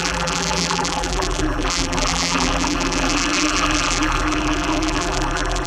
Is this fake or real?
fake